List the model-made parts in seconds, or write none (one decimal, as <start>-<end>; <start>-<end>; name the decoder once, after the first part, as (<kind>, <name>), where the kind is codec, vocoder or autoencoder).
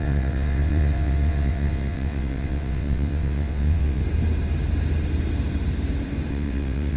0.0-4.0 (vocoder, WaveNeXt); 6.3-7.0